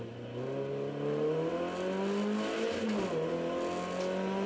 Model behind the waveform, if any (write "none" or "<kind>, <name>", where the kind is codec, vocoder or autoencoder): none